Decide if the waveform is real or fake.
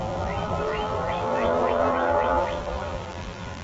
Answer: fake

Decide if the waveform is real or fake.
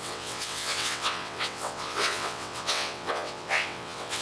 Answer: fake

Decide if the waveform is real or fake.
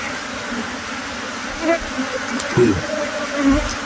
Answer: real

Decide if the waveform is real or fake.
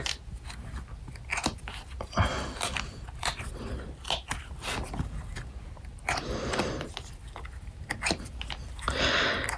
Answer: real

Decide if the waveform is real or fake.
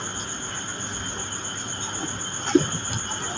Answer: real